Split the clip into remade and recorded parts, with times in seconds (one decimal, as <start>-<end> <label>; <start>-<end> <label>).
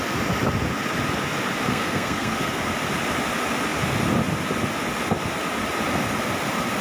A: 0.0-1.7 recorded; 1.7-2.6 remade; 2.6-6.8 recorded